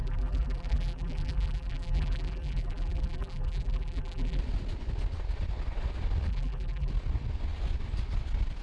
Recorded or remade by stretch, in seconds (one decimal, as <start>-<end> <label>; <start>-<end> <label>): 0.0-4.4 remade; 4.4-6.3 recorded; 6.3-6.9 remade; 6.9-8.6 recorded

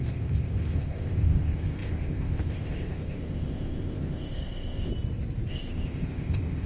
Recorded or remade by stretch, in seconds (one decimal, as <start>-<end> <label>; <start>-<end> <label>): 0.0-4.9 remade; 4.9-5.5 recorded; 5.5-6.7 remade

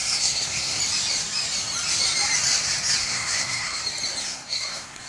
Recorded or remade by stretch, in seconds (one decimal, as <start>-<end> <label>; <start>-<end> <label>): 0.0-0.8 remade; 0.8-3.0 recorded; 3.0-3.8 remade; 3.8-4.2 recorded; 4.2-5.1 remade

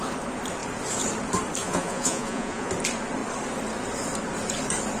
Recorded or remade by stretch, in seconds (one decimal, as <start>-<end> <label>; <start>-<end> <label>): 0.0-1.6 recorded; 1.6-2.7 remade; 2.7-5.0 recorded

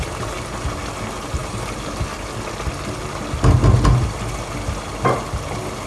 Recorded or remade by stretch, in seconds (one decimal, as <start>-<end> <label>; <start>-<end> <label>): 0.0-5.9 recorded

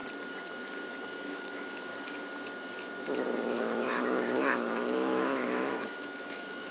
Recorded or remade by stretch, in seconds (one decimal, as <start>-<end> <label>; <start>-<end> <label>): 0.0-0.9 recorded; 0.9-1.9 remade; 1.9-3.6 recorded; 3.6-6.7 remade

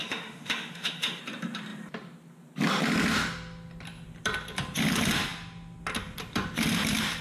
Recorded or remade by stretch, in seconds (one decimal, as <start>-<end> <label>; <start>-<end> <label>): 0.0-1.2 remade; 1.2-7.2 recorded

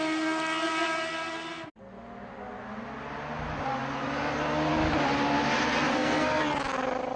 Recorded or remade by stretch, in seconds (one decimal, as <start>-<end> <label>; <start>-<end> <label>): 0.0-5.9 recorded; 5.9-6.4 remade; 6.4-7.2 recorded